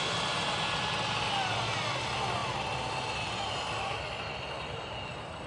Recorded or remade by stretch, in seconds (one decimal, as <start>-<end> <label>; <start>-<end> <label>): 0.0-5.5 recorded